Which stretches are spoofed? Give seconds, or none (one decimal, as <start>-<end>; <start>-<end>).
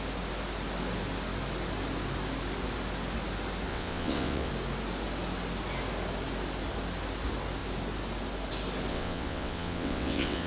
3.7-4.5; 8.9-10.5